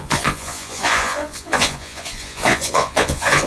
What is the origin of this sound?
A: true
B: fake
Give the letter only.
B